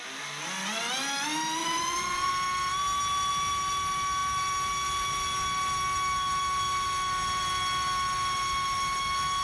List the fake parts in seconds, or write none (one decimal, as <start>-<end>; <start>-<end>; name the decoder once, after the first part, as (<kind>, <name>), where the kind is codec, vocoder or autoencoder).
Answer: 1.6-2.3 (vocoder, Vocos)